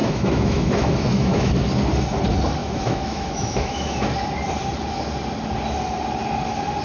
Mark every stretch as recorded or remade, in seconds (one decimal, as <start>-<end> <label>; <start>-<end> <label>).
0.0-1.5 remade; 1.5-2.6 recorded; 2.6-4.0 remade; 4.0-6.8 recorded